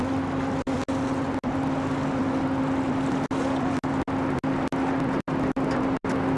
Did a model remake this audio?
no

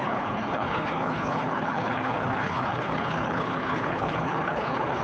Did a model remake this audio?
yes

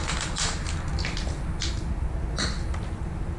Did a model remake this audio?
no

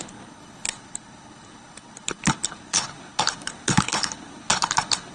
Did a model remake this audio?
yes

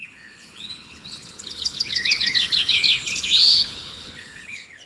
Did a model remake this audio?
yes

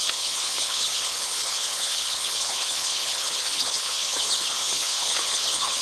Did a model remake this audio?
yes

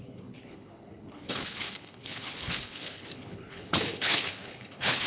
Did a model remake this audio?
yes